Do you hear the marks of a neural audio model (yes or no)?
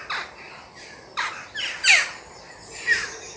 no